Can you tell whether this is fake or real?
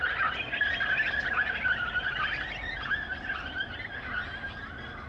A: real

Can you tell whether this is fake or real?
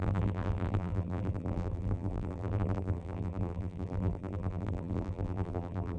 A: fake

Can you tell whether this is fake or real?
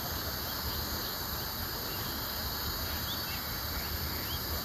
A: real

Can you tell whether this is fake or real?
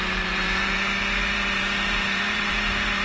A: fake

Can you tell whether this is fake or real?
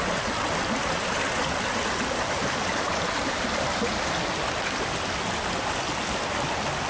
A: real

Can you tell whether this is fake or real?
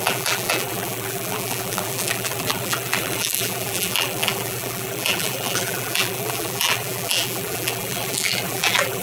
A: fake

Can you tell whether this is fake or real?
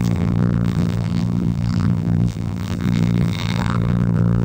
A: fake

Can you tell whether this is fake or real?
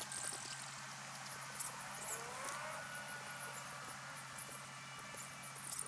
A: real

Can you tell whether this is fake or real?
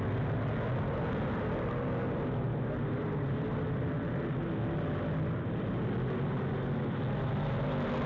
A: real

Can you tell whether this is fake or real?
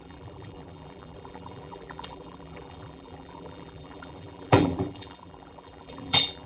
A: fake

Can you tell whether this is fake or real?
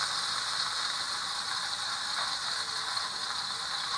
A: real